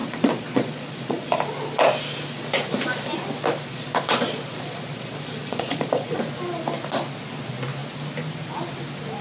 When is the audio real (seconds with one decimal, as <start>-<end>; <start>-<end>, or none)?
1.3-3.7; 6.2-9.2